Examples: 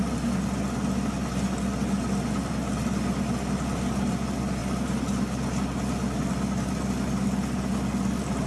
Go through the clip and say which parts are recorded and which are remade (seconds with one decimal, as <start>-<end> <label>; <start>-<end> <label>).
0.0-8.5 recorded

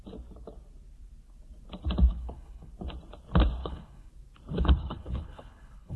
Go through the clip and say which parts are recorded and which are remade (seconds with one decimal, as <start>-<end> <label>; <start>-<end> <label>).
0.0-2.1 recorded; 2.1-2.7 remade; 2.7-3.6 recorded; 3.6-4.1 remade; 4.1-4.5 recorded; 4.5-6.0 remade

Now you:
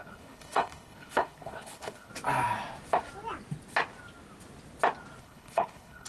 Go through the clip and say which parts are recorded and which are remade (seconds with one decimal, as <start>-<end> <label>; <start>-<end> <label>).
0.0-2.1 remade; 2.1-5.2 recorded; 5.2-6.1 remade